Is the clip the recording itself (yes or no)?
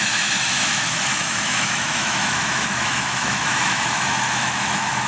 no